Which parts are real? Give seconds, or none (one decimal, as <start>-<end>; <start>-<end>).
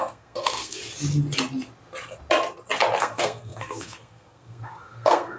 0.8-3.0